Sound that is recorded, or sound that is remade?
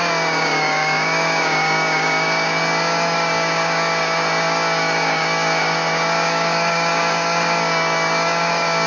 remade